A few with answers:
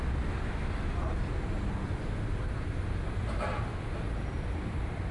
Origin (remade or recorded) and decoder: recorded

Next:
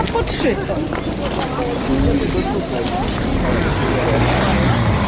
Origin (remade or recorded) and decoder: recorded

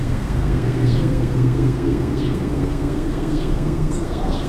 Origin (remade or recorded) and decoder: remade, codec, SNAC